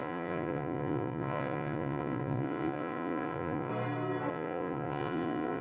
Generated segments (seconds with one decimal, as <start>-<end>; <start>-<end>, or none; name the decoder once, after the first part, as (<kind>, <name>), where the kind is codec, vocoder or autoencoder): 0.0-3.7 (vocoder, Vocos); 4.3-5.6